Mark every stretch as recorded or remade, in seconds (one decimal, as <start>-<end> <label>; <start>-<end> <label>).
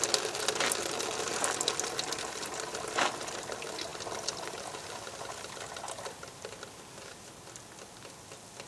0.0-8.7 recorded